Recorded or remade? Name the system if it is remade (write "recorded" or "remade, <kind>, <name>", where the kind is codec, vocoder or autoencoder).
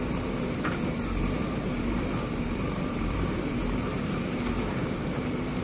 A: remade, vocoder, BigVGAN v2